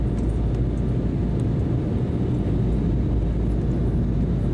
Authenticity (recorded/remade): recorded